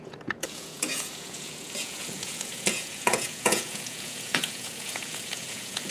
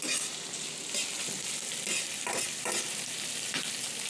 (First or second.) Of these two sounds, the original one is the second